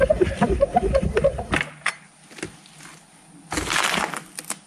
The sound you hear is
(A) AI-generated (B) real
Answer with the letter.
B